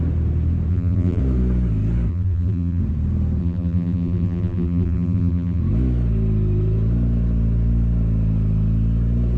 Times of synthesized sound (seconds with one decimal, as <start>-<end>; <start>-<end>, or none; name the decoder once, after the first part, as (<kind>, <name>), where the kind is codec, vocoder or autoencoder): 0.7-1.2 (vocoder, BigVGAN v2); 2.1-2.8; 3.4-5.6